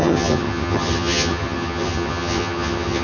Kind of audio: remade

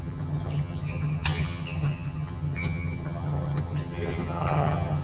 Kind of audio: remade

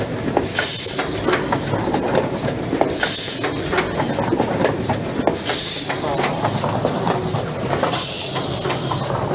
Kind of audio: recorded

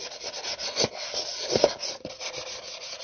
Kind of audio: recorded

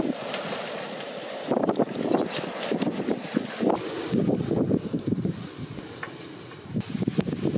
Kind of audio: recorded